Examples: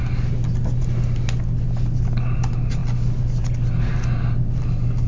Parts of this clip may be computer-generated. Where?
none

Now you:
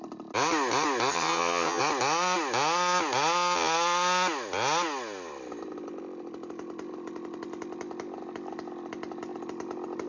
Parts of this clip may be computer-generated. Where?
1.1-1.8 (vocoder, HiFi-GAN)